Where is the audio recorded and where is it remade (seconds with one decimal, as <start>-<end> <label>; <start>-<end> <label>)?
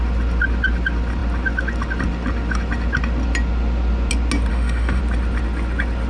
0.0-4.5 recorded; 4.5-5.0 remade; 5.0-6.1 recorded